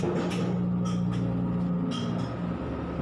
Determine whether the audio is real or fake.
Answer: real